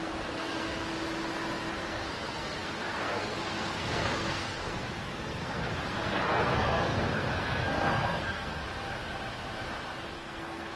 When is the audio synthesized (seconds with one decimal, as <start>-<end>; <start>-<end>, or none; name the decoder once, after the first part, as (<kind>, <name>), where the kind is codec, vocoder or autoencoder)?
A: 0.0-0.9 (codec, SNAC); 1.7-8.6; 10.1-10.8